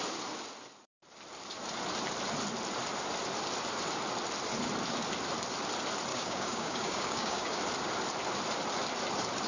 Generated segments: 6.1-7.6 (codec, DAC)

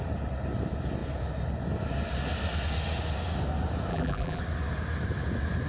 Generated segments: 3.9-4.4 (vocoder, BigVGAN v2)

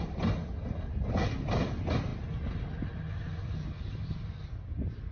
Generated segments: none

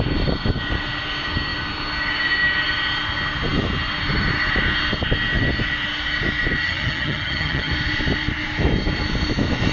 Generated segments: 6.6-7.7 (vocoder, HiFi-GAN)